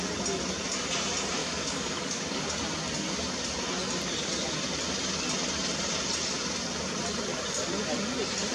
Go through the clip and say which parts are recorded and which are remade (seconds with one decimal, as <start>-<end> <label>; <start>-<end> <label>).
0.0-1.4 recorded; 1.4-2.4 remade; 2.4-8.5 recorded